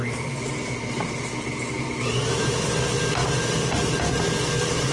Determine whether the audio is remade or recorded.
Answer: recorded